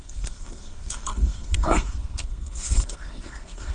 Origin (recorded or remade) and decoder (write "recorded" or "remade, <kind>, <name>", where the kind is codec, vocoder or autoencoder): remade, codec, SNAC